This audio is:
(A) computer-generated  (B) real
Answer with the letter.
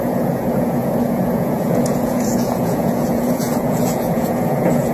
A